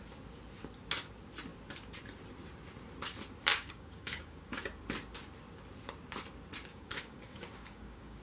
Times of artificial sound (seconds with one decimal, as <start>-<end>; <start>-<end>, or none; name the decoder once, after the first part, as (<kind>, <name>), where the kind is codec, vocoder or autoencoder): 3.5-4.6 (codec, DAC); 6.7-8.2